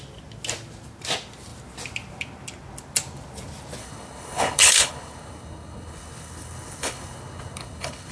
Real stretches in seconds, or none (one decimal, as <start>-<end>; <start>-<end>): 0.0-3.8